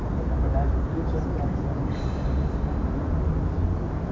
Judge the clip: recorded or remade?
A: recorded